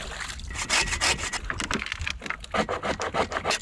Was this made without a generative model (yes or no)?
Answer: yes